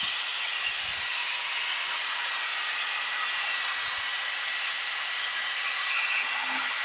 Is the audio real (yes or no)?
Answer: yes